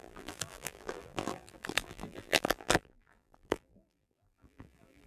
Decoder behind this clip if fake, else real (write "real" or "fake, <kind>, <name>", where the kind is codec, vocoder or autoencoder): fake, vocoder, BigVGAN v2